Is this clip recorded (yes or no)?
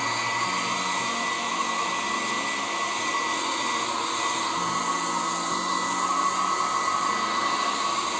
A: yes